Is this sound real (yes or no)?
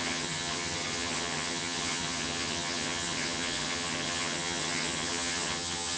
no